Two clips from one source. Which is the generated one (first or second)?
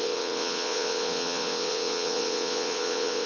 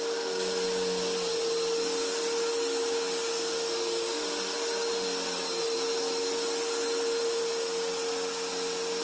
first